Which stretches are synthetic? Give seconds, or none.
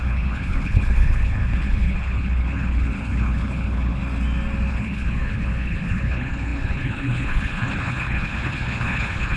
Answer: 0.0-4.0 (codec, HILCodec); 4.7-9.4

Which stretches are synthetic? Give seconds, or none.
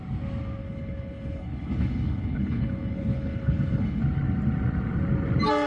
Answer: 0.6-4.0 (codec, HILCodec)